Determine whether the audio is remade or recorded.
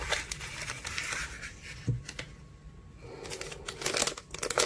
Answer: recorded